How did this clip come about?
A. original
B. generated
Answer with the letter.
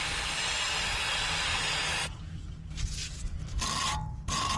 A